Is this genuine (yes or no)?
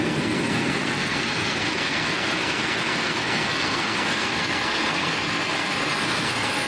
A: no